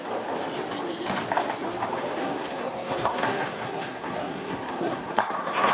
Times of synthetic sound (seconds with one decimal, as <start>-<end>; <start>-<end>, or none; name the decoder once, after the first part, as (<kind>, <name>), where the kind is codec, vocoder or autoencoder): 2.2-5.7 (codec, SNAC)